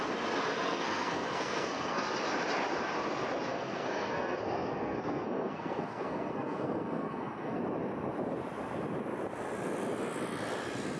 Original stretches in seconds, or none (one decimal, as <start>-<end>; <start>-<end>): 0.0-0.5; 2.0-3.5; 7.6-11.0